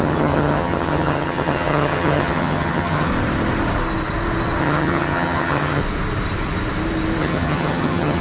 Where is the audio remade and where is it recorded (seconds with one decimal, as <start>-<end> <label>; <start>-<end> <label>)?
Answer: 0.0-3.1 remade; 3.1-4.6 recorded; 4.6-5.8 remade; 5.8-7.2 recorded; 7.2-8.2 remade